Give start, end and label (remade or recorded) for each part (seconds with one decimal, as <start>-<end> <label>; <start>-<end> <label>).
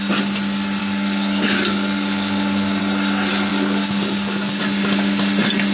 0.0-0.8 recorded; 0.8-2.8 remade; 2.8-3.5 recorded; 3.5-4.6 remade; 4.6-5.7 recorded